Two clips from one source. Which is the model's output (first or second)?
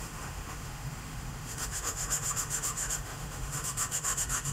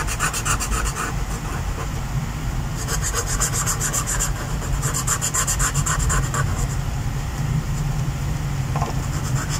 first